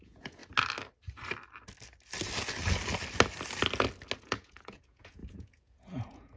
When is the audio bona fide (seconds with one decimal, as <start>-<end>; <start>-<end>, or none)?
0.4-4.2